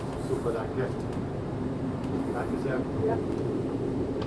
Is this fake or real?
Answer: fake